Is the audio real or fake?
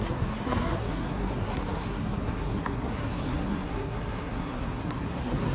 fake